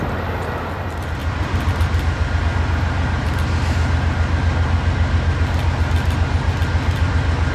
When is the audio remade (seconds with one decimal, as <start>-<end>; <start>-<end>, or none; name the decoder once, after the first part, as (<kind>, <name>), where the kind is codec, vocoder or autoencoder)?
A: 1.2-2.4 (vocoder, BigVGAN v2)